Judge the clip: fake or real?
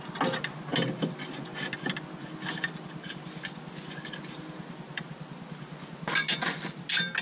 real